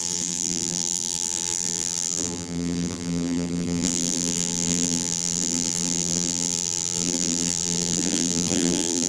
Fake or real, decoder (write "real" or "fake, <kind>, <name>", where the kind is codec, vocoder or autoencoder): fake, vocoder, BigVGAN v2